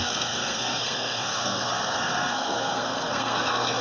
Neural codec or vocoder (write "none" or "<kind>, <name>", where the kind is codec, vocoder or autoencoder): codec, SNAC